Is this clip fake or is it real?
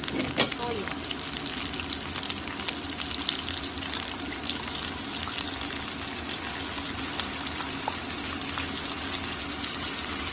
real